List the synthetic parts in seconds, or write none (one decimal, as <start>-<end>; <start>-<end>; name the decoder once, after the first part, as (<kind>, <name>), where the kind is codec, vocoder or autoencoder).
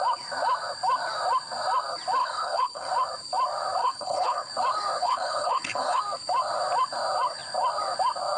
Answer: 2.2-2.9 (codec, HILCodec); 3.8-4.5; 5.0-6.0